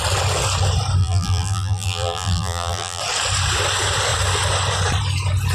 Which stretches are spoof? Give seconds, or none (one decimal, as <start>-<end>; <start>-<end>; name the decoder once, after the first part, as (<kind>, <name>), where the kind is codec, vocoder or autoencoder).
1.0-3.0 (vocoder, BigVGAN v2)